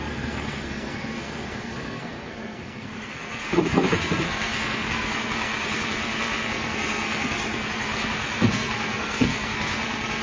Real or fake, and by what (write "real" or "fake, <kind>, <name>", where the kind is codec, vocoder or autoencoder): fake, codec, SNAC